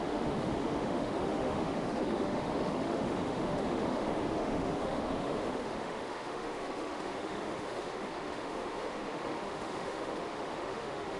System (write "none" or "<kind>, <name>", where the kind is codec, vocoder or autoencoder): autoencoder, DAC-VAE